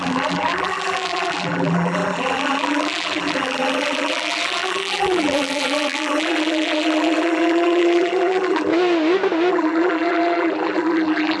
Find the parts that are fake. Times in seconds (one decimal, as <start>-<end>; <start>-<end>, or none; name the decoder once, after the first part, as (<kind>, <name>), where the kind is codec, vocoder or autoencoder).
0.0-8.7 (vocoder, BigVGAN v2); 9.5-11.4